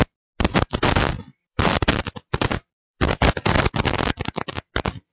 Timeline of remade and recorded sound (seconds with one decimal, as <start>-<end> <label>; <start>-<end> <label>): 0.0-1.3 recorded; 1.3-4.4 remade; 4.4-5.1 recorded